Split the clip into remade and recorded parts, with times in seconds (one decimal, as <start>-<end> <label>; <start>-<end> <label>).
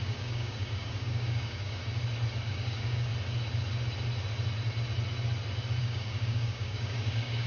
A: 0.0-1.8 remade; 1.8-2.5 recorded; 2.5-3.1 remade; 3.1-5.8 recorded; 5.8-7.5 remade